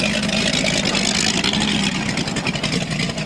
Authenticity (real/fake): real